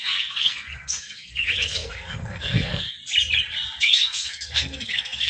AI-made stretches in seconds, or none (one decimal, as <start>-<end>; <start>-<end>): 0.0-3.0; 3.8-5.3